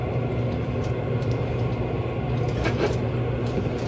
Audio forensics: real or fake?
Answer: real